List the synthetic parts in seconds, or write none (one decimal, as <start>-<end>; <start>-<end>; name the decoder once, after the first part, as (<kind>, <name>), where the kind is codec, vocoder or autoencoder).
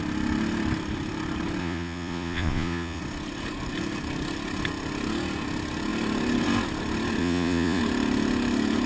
1.6-3.0 (vocoder, Vocos); 7.2-7.8